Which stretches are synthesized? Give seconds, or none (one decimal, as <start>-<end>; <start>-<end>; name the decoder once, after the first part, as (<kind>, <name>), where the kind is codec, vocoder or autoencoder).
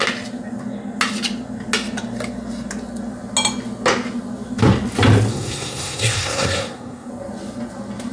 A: 5.3-7.1 (codec, SNAC)